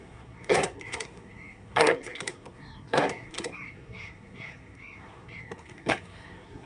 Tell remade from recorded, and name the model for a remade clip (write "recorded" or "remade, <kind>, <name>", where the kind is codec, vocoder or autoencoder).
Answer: remade, codec, SNAC